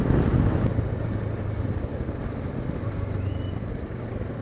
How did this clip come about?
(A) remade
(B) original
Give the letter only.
B